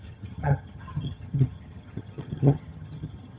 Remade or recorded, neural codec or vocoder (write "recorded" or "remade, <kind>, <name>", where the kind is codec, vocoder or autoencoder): remade, vocoder, HiFi-GAN